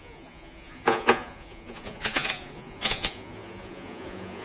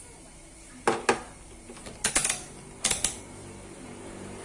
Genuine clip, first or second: second